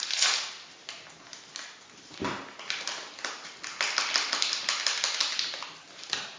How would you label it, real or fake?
real